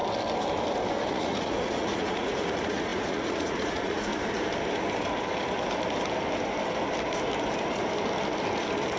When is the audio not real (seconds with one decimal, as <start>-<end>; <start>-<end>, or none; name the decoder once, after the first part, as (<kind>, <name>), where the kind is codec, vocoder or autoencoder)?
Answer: 1.1-4.1 (vocoder, Vocos)